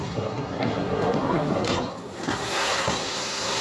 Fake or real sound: fake